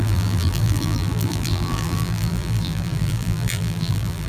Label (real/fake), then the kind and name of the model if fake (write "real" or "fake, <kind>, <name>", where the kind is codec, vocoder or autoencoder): fake, vocoder, BigVGAN v2